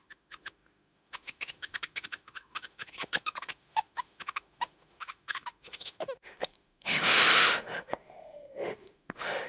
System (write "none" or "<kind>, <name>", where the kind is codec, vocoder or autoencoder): autoencoder, DAC-VAE